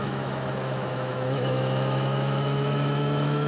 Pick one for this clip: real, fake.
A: fake